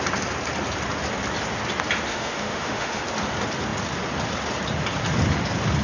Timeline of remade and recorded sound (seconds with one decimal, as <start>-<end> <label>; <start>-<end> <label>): 0.0-2.1 recorded; 2.1-3.0 remade; 3.0-5.8 recorded

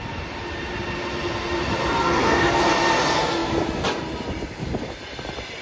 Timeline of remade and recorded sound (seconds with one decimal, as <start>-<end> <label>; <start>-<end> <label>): 0.0-2.0 recorded; 2.0-2.6 remade; 2.6-5.6 recorded